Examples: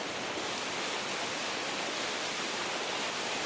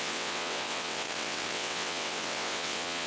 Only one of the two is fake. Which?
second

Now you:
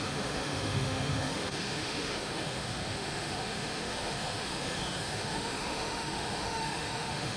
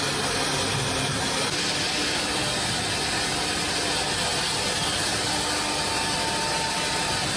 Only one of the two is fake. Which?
first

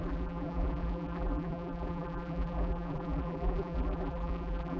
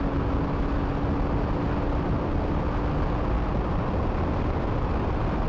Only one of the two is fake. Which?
first